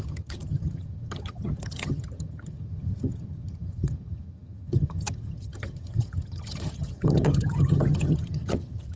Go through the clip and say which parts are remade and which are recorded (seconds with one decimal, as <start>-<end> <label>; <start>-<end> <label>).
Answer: 0.0-9.0 remade